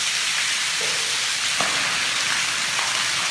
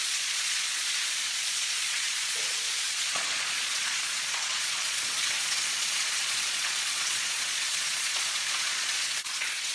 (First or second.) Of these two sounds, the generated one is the second